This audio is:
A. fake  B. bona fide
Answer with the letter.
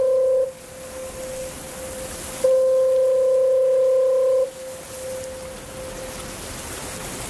B